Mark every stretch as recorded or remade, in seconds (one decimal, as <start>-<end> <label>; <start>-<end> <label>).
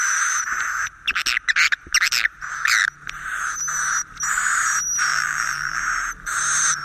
0.0-5.1 recorded; 5.1-5.8 remade; 5.8-6.8 recorded